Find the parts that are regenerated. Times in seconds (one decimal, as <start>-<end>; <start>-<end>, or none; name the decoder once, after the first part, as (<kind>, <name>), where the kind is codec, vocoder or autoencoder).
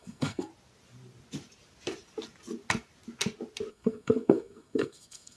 0.0-0.5 (codec, SNAC); 3.7-5.4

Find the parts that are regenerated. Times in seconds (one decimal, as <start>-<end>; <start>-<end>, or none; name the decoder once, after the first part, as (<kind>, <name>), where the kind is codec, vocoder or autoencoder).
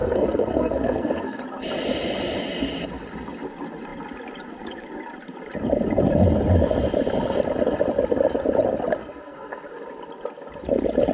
0.0-1.4 (codec, SNAC); 9.0-9.6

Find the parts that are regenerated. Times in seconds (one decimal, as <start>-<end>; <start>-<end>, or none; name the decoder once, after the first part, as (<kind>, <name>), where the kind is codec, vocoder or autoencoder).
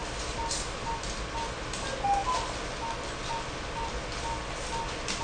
none